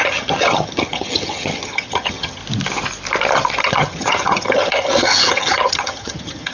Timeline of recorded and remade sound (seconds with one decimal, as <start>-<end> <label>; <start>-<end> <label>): 0.0-2.4 remade; 2.4-3.6 recorded; 3.6-6.5 remade